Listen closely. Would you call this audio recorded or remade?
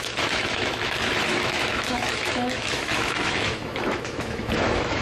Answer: remade